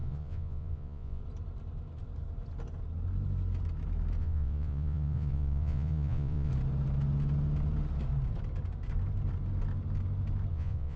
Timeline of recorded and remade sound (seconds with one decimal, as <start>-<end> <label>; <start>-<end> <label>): 0.0-1.2 remade; 1.2-4.2 recorded; 4.2-6.5 remade; 6.5-10.5 recorded; 10.5-11.0 remade